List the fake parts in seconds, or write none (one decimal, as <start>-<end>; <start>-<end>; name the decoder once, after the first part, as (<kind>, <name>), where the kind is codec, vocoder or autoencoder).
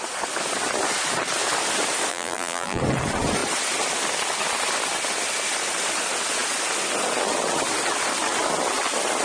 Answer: 2.1-2.8 (vocoder, BigVGAN v2)